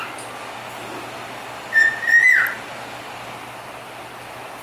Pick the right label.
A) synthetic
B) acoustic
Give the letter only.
B